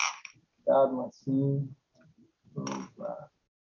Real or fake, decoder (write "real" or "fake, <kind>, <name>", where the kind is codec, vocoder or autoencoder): real